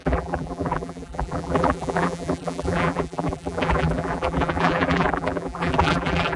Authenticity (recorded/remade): remade